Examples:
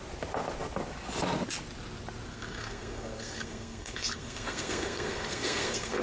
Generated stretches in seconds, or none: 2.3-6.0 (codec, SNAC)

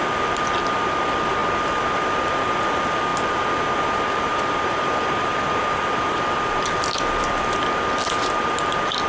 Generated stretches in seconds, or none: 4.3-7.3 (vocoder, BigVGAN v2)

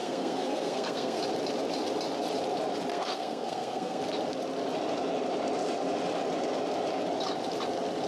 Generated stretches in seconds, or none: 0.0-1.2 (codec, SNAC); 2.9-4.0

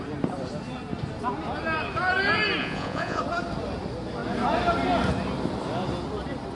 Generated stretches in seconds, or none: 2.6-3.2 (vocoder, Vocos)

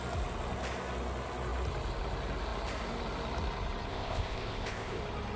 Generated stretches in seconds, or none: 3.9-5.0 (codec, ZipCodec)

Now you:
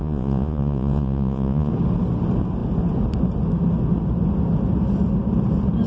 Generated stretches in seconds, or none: 0.0-1.7 (vocoder, Vocos)